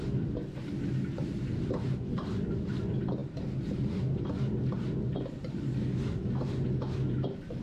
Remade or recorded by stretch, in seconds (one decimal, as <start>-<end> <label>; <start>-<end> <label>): 0.0-7.6 recorded